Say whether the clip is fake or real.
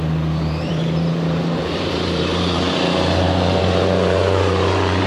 fake